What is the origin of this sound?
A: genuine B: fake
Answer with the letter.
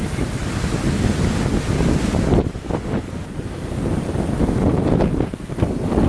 A